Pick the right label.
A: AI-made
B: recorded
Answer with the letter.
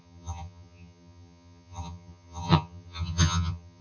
A